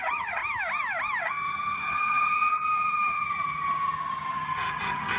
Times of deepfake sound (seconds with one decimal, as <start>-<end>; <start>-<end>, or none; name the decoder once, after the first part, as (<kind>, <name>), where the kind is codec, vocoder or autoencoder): 0.0-0.4 (vocoder, HiFi-GAN); 1.2-5.2